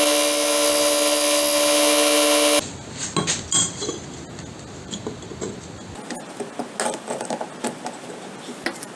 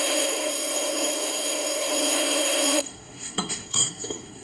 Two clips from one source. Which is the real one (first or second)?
first